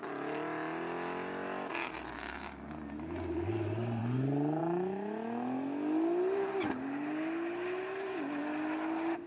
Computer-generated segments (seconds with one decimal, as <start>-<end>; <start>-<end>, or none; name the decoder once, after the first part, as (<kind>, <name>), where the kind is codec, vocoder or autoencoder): none